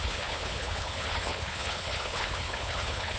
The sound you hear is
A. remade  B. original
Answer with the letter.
A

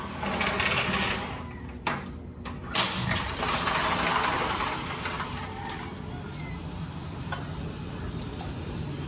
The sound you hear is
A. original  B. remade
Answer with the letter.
A